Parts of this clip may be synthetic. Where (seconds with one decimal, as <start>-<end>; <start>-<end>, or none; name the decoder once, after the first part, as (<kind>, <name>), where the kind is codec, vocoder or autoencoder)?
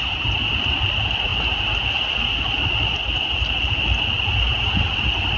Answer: none